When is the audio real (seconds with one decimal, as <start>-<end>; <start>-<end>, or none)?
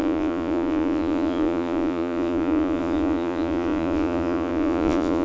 none